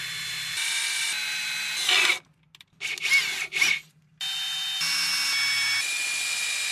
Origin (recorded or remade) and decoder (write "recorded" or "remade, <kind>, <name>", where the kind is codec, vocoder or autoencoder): recorded